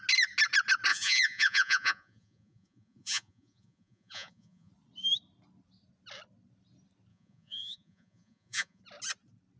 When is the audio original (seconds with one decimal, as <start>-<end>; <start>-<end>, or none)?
0.0-0.9; 4.7-7.1; 8.8-9.6